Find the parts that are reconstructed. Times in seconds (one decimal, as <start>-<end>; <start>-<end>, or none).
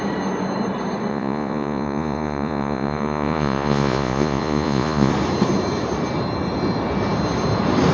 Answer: 1.1-5.1